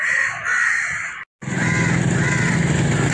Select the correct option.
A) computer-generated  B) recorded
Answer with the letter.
B